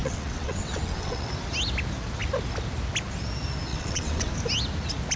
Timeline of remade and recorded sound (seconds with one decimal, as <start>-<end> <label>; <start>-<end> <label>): 0.0-1.3 remade; 1.3-3.7 recorded; 3.7-4.3 remade; 4.3-5.2 recorded